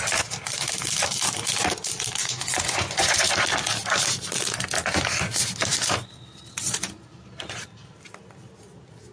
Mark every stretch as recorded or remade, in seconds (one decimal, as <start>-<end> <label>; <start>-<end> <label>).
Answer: 0.0-2.2 recorded; 2.2-3.3 remade; 3.3-9.1 recorded

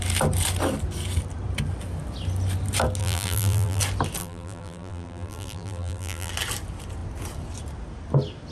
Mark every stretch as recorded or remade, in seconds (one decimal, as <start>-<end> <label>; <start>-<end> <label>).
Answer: 0.0-3.0 recorded; 3.0-3.8 remade; 3.8-4.2 recorded; 4.2-6.3 remade; 6.3-8.5 recorded

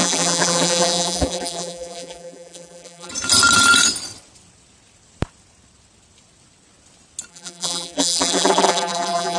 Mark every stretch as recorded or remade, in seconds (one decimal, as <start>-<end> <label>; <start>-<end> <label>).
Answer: 0.0-3.1 remade; 3.1-7.3 recorded; 7.3-9.4 remade

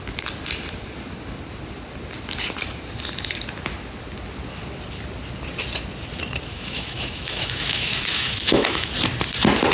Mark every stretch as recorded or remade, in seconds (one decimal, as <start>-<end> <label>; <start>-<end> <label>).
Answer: 0.0-6.5 recorded; 6.5-8.9 remade; 8.9-9.7 recorded